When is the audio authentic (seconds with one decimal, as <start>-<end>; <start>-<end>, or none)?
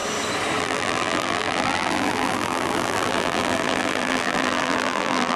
0.0-0.6